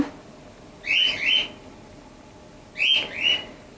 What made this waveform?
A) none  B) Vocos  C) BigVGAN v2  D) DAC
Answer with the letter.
A